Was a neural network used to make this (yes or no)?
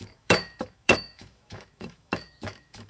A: yes